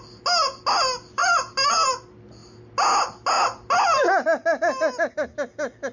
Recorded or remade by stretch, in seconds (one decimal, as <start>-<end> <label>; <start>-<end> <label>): 0.0-5.9 recorded